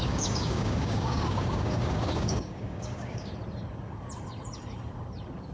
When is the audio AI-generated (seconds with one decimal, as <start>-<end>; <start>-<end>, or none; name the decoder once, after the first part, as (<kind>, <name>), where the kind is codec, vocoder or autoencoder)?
0.0-3.3 (codec, DAC)